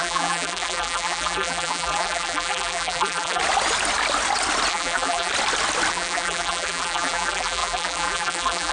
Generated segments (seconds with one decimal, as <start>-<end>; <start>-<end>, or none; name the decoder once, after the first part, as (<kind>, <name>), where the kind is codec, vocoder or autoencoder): 0.0-3.4 (vocoder, BigVGAN v2); 4.7-5.3; 5.9-8.7